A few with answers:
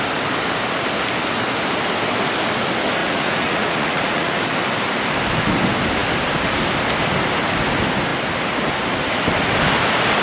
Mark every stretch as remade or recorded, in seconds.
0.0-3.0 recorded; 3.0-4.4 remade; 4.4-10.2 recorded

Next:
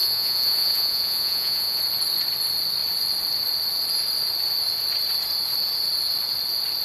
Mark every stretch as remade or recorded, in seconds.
0.0-1.8 remade; 1.8-6.8 recorded

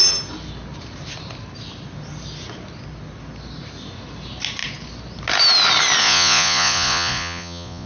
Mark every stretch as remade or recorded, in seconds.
0.0-6.0 recorded; 6.0-7.9 remade

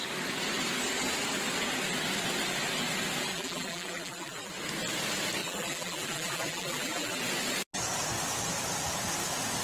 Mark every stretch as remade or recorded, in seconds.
0.0-3.3 recorded; 3.3-4.5 remade; 4.5-5.4 recorded; 5.4-7.2 remade; 7.2-9.6 recorded

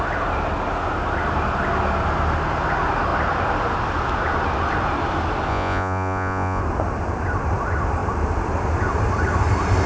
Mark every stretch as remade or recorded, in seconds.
0.0-5.5 recorded; 5.5-6.6 remade; 6.6-9.9 recorded